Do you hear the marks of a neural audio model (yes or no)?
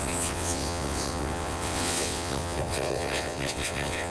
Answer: yes